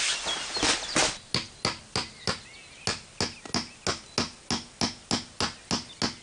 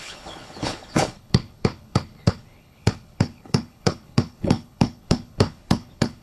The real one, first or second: first